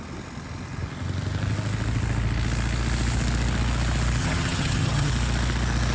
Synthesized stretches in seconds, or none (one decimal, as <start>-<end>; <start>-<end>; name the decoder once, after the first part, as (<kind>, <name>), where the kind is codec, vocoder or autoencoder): 4.2-5.1 (vocoder, HiFi-GAN)